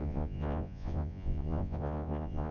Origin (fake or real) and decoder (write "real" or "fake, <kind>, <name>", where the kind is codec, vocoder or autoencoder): fake, vocoder, Vocos